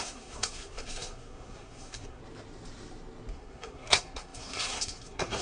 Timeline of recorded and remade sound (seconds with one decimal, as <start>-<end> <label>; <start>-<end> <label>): 0.0-2.2 remade; 2.2-3.3 recorded; 3.3-5.4 remade